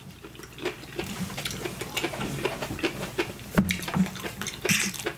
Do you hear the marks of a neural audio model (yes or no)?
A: yes